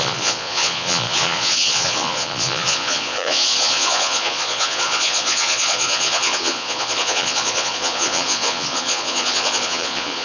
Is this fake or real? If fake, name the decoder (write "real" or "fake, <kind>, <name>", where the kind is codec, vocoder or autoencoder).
fake, vocoder, Vocos